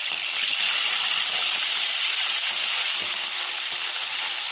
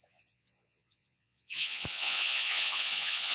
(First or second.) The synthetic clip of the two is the second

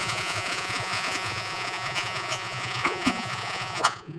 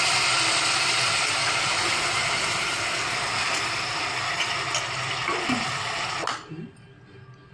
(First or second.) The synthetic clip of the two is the first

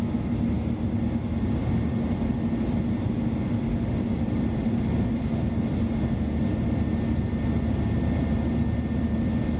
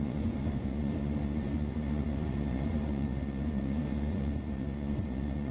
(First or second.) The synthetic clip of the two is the second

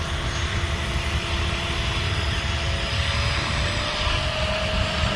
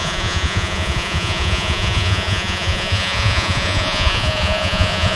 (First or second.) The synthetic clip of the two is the second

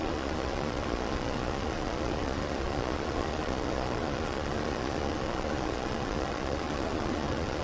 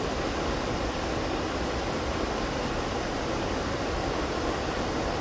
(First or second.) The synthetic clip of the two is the first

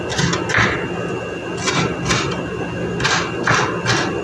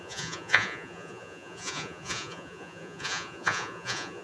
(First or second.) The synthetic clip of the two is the second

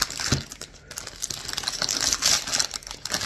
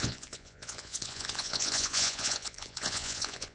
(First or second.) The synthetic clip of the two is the second